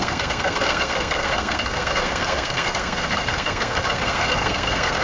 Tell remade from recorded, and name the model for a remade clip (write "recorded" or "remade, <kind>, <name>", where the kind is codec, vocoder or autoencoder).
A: remade, codec, SNAC